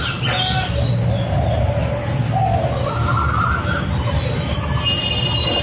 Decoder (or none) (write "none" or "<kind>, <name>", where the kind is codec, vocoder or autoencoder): none